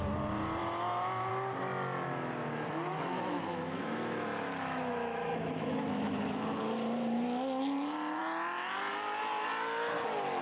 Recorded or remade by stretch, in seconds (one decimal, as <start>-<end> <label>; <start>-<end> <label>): 0.0-0.6 recorded; 0.6-1.3 remade; 1.3-2.9 recorded; 2.9-6.6 remade; 6.6-10.4 recorded

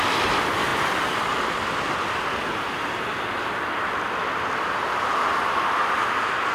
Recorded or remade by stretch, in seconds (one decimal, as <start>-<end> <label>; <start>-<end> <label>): 0.0-6.5 recorded

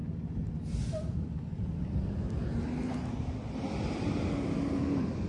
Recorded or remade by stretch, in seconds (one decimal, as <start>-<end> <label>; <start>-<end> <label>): 0.0-5.3 recorded

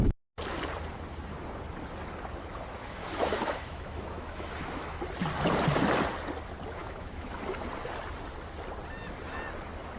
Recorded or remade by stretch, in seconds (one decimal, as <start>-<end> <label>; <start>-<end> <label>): 0.0-2.8 recorded; 2.8-5.0 remade; 5.0-6.8 recorded; 6.8-7.4 remade; 7.4-10.0 recorded

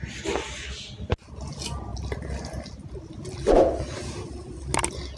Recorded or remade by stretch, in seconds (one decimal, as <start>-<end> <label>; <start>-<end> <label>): 0.0-5.2 recorded

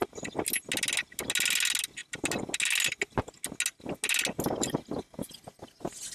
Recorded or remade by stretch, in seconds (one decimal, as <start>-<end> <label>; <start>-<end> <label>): 0.0-6.1 recorded